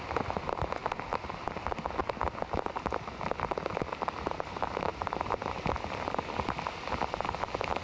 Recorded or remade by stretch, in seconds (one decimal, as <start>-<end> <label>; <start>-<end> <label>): 0.0-7.8 recorded